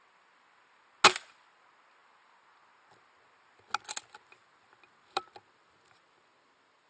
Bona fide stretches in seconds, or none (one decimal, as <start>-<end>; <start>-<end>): 0.0-6.9

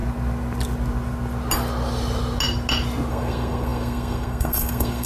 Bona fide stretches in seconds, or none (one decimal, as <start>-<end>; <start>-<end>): 0.0-3.1

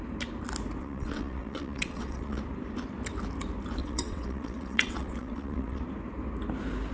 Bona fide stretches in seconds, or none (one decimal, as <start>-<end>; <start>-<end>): 0.0-0.8; 2.4-3.8; 5.8-6.9

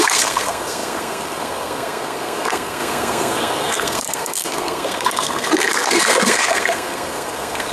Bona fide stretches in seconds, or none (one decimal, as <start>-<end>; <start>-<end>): none

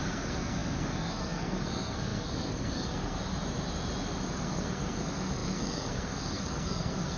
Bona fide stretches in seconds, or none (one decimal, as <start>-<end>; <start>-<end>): 3.2-4.4